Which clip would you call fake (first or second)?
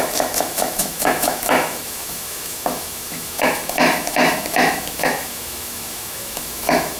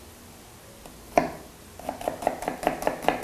first